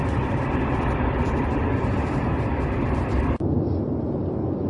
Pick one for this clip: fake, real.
real